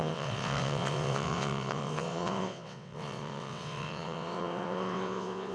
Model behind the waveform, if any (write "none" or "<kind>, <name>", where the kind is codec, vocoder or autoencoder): vocoder, WaveNeXt